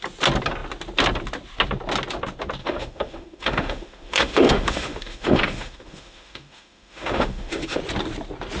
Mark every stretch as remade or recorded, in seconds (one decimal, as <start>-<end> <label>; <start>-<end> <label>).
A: 0.0-2.6 recorded; 2.6-7.8 remade; 7.8-8.6 recorded